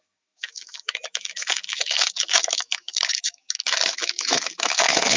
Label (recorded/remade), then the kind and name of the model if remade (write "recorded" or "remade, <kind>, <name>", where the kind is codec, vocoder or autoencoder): remade, autoencoder, DAC-VAE